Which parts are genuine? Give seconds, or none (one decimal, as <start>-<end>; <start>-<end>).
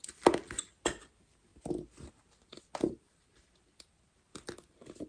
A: 0.0-5.1